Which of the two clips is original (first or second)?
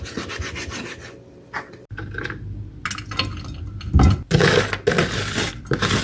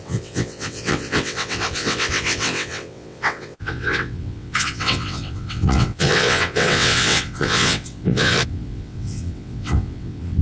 first